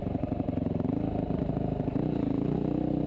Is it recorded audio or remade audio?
remade